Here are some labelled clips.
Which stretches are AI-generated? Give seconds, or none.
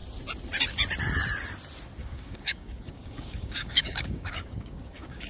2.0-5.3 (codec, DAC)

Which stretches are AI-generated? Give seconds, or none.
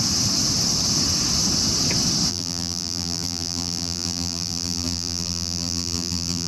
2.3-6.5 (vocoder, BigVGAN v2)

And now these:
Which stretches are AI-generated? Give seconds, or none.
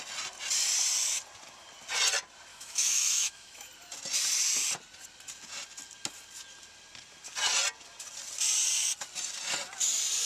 2.5-3.7 (autoencoder, DAC-VAE)